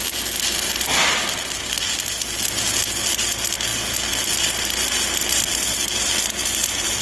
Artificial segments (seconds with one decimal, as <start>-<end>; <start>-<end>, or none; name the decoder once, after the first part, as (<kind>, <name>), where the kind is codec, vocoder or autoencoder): none